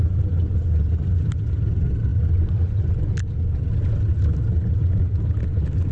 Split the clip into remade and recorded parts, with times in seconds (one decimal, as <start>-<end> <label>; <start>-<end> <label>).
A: 0.0-5.9 recorded